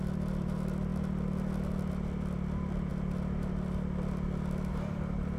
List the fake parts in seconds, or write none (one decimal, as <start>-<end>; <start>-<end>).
0.0-0.9; 1.9-2.9; 4.7-5.4